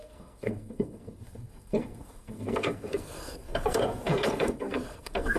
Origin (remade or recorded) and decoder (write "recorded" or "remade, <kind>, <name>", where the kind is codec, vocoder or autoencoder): remade, codec, SNAC